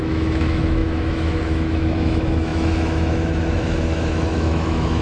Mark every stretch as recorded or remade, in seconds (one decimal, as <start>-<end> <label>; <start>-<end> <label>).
0.0-5.0 remade